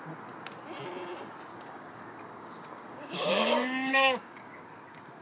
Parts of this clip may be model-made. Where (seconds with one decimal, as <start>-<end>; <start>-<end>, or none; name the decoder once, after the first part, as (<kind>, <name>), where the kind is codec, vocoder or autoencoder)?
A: 1.5-4.6 (codec, DAC)